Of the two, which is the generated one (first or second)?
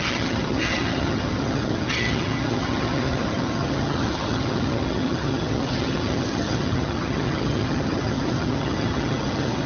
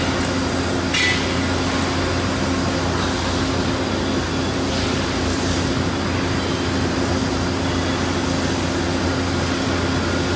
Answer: first